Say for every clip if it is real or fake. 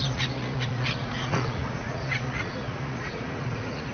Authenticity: fake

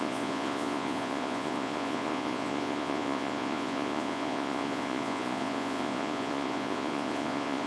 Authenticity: fake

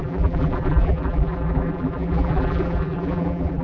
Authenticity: fake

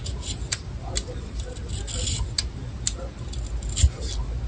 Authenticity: real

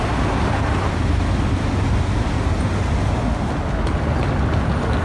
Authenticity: real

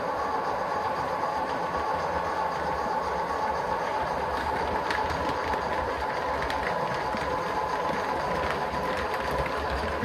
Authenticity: real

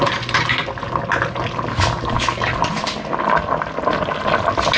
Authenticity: real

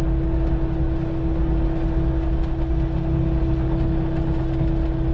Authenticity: real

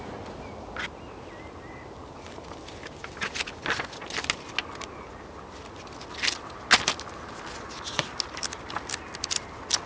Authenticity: real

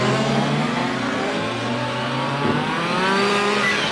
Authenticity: real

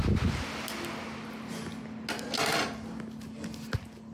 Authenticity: real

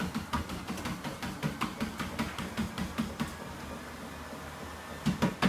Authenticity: real